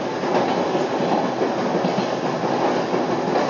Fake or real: real